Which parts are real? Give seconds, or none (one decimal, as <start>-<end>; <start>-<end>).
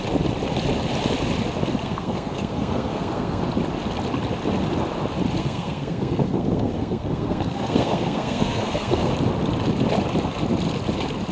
0.0-1.8; 3.4-5.4; 9.1-11.3